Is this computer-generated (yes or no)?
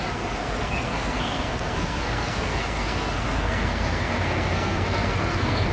yes